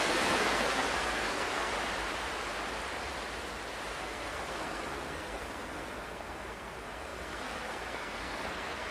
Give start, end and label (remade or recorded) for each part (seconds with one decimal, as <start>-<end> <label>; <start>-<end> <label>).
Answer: 0.0-1.7 remade; 1.7-3.9 recorded; 3.9-8.9 remade